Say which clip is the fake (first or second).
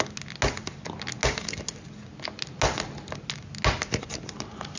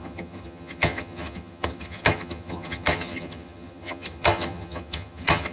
second